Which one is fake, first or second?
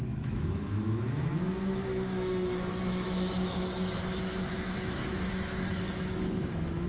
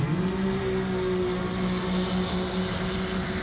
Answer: first